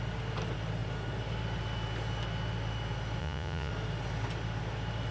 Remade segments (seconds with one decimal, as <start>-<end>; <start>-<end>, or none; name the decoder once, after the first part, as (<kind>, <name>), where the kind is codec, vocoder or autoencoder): 3.2-3.7 (vocoder, Vocos)